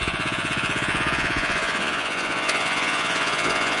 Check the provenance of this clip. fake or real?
fake